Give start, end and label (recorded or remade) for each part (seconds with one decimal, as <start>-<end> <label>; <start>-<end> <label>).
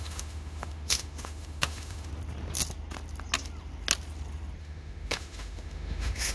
0.0-2.1 remade; 2.1-4.6 recorded; 4.6-6.3 remade